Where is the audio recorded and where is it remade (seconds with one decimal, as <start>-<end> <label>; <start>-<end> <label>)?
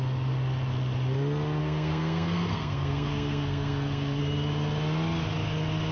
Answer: 0.0-1.6 recorded; 1.6-4.2 remade; 4.2-5.9 recorded